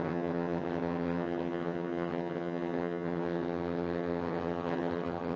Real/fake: fake